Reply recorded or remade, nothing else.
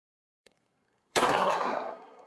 remade